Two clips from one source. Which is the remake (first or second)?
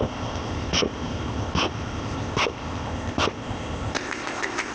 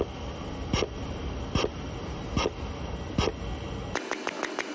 first